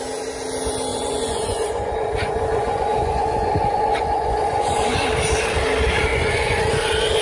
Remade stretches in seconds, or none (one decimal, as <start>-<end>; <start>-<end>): 0.9-5.0; 6.1-6.8